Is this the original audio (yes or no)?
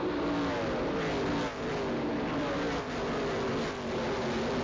yes